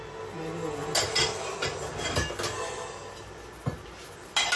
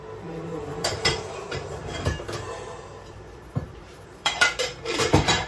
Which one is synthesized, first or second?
second